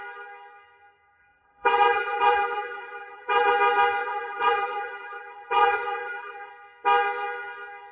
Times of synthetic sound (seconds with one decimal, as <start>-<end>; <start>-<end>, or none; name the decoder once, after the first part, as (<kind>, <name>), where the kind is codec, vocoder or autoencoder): 1.2-3.5 (vocoder, BigVGAN v2); 4.0-6.5

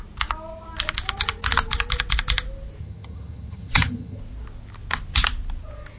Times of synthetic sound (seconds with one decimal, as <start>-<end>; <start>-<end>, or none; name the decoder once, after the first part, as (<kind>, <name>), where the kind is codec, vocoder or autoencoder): 2.8-4.2 (vocoder, HiFi-GAN)

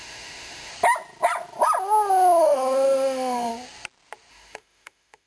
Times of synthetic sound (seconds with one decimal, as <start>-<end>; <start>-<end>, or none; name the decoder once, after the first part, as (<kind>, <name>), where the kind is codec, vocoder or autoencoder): 0.0-0.7 (autoencoder, DAC-VAE); 2.4-3.5; 4.3-5.3